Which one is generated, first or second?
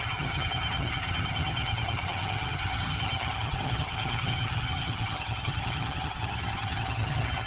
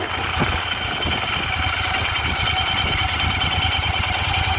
first